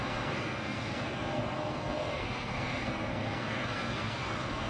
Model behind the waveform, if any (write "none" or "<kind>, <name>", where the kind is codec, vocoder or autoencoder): codec, SNAC